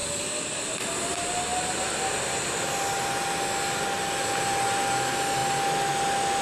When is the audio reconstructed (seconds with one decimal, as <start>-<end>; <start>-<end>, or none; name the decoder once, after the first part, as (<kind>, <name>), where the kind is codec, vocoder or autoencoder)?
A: 0.0-0.6 (codec, DAC)